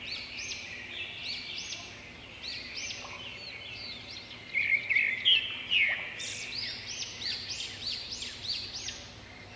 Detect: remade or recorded recorded